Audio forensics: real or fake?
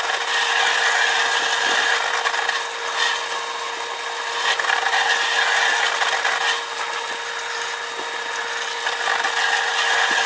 real